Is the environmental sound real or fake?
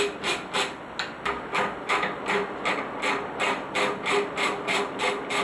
real